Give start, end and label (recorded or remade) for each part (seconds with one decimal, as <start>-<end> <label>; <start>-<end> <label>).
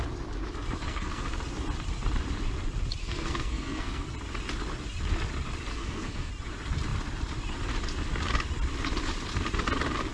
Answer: 0.0-0.8 recorded; 0.8-1.4 remade; 1.4-3.0 recorded; 3.0-4.1 remade; 4.1-5.7 recorded; 5.7-6.3 remade; 6.3-10.1 recorded